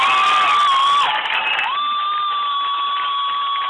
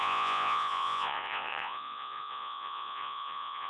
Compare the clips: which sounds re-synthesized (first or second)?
second